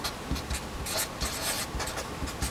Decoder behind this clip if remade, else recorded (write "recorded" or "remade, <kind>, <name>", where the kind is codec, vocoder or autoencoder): recorded